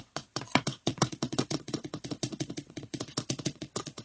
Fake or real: fake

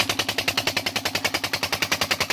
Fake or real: real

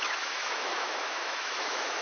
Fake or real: fake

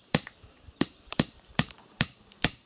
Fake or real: fake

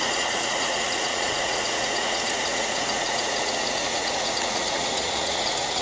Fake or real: fake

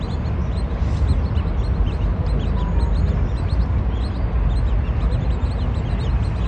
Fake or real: real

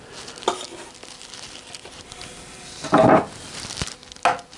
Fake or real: real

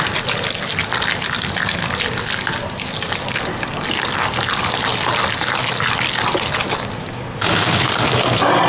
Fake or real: real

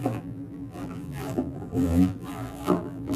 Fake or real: fake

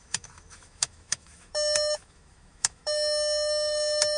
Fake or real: fake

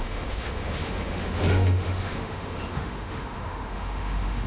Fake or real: fake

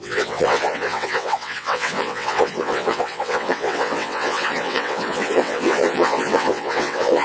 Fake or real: fake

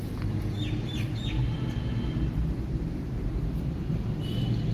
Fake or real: real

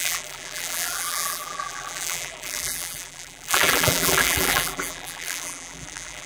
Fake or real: fake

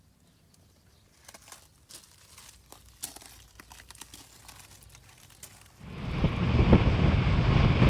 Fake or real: real